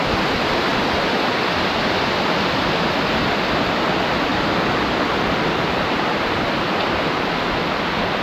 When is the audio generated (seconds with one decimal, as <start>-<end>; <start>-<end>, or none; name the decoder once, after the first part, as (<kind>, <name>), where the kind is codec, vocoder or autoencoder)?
none

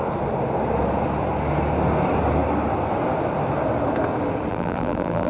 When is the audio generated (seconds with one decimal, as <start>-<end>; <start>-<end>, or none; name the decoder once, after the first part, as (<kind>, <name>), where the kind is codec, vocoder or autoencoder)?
4.5-5.3 (vocoder, BigVGAN v2)

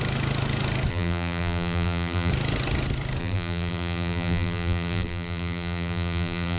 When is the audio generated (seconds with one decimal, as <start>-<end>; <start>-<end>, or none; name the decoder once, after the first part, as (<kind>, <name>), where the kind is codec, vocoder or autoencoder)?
0.9-2.3 (vocoder, BigVGAN v2); 3.2-6.6

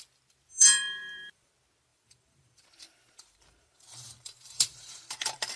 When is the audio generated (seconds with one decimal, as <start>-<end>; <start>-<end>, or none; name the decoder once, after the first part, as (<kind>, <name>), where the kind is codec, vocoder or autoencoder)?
0.5-1.5 (vocoder, BigVGAN v2); 1.9-5.6

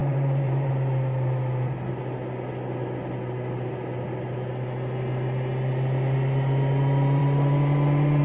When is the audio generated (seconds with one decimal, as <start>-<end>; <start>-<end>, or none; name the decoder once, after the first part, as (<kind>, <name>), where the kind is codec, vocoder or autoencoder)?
0.0-0.7 (vocoder, BigVGAN v2)

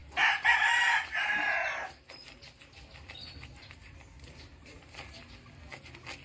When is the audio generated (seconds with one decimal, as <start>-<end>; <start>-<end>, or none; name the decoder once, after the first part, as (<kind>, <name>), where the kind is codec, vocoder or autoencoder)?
4.5-5.2 (vocoder, BigVGAN v2)

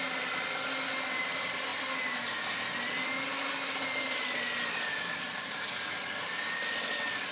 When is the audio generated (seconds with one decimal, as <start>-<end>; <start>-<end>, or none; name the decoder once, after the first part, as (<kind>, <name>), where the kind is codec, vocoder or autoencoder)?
none

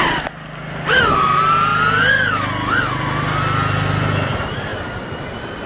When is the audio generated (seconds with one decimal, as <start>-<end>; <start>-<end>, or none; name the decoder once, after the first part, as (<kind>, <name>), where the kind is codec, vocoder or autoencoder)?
0.6-1.7 (vocoder, BigVGAN v2); 2.8-4.7; 5.3-5.7